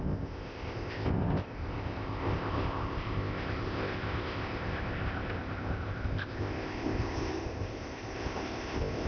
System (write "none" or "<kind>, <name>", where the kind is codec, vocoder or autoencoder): codec, ZipCodec